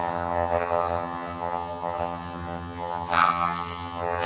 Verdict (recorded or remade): remade